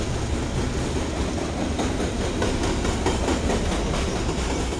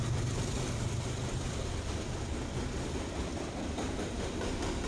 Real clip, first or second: first